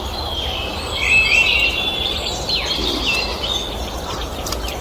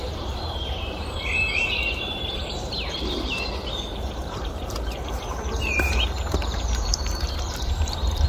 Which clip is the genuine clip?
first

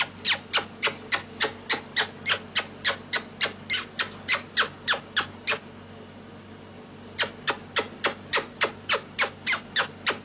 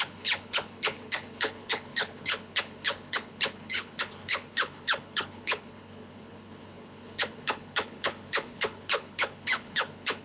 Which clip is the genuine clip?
first